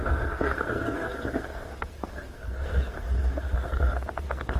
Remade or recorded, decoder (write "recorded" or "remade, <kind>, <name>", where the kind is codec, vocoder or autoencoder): remade, codec, SNAC